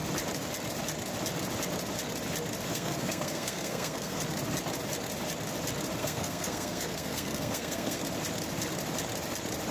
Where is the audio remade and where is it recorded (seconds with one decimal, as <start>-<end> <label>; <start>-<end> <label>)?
0.0-2.7 recorded; 2.7-4.2 remade; 4.2-6.0 recorded; 6.0-8.0 remade; 8.0-9.7 recorded